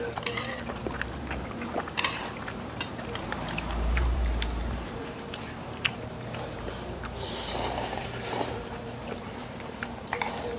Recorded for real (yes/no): no